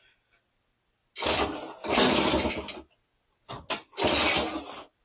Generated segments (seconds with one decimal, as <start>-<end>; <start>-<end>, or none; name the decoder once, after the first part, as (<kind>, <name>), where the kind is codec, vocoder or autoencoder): none